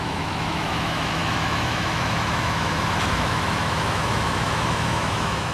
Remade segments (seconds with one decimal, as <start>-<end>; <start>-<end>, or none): 0.0-5.5